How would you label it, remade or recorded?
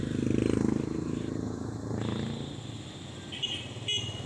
recorded